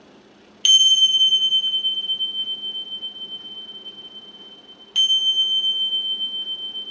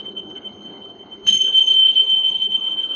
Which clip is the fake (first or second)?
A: second